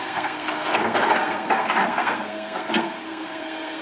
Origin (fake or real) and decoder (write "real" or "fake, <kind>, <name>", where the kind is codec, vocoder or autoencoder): fake, codec, SNAC